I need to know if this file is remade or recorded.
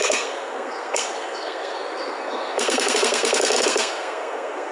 remade